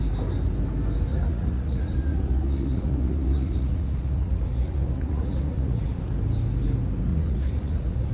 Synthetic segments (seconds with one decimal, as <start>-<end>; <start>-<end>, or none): 1.1-6.0; 7.1-8.1